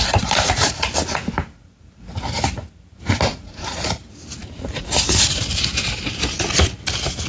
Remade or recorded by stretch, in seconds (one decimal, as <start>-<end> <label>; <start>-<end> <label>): 0.0-3.3 recorded; 3.3-3.9 remade; 3.9-4.4 recorded; 4.4-5.4 remade; 5.4-7.3 recorded